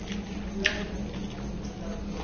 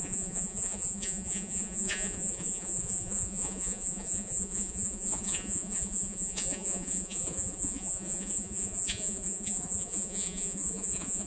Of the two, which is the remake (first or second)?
second